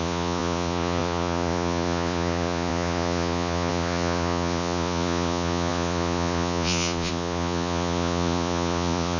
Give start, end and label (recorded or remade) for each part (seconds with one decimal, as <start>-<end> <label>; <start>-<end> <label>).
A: 0.0-9.2 remade

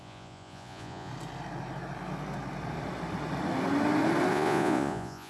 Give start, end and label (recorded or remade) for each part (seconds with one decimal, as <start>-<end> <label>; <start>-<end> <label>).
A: 0.0-1.1 remade; 1.1-4.3 recorded; 4.3-5.3 remade

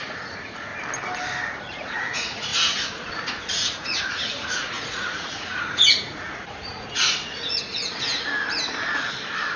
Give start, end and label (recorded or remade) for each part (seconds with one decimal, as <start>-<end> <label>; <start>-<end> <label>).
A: 0.0-0.7 remade; 0.7-1.6 recorded; 1.6-8.1 remade; 8.1-9.6 recorded

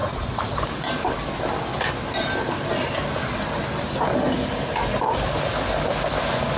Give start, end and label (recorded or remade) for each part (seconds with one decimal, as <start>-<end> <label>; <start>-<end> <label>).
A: 0.0-0.6 remade; 0.6-6.6 recorded

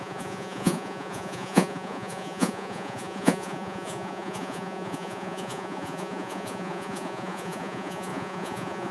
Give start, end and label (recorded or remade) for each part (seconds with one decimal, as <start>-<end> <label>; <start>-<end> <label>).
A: 0.0-8.9 remade

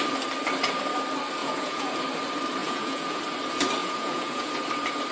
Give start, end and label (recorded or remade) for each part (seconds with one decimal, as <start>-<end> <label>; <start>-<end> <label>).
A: 0.0-1.4 recorded; 1.4-1.9 remade; 1.9-2.6 recorded; 2.6-3.2 remade; 3.2-3.8 recorded; 3.8-4.5 remade; 4.5-5.1 recorded